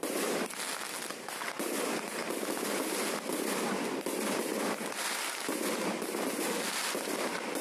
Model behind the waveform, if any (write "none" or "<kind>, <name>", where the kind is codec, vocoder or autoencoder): none